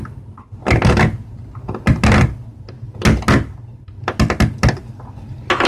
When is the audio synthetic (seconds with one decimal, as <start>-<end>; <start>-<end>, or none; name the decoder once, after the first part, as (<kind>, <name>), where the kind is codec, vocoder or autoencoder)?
none